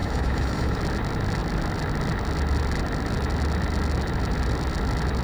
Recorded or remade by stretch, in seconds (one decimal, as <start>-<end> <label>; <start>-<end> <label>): 0.0-0.8 remade; 0.8-5.2 recorded